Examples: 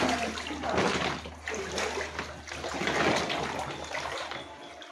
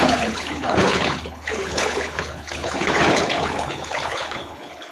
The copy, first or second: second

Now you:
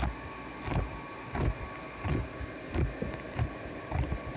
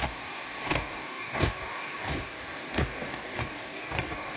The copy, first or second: second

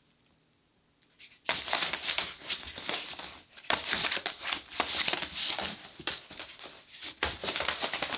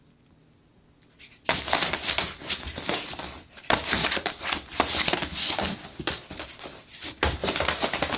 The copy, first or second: first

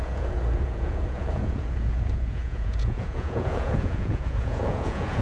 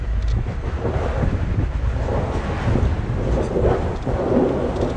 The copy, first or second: first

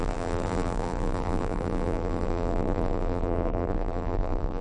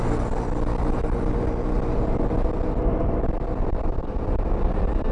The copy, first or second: first